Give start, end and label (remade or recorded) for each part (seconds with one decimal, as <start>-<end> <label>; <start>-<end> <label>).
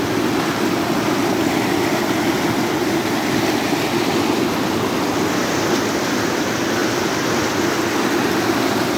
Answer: 0.0-9.0 recorded